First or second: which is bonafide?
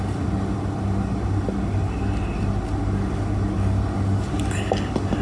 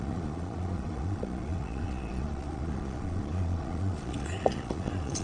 first